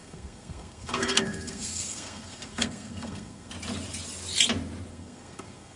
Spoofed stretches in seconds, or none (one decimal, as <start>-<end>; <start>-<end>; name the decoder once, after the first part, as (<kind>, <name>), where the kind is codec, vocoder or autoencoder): 0.0-3.5 (codec, SNAC); 4.9-5.8